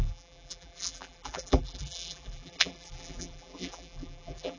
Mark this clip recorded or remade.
remade